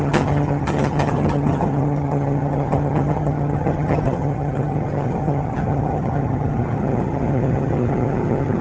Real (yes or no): no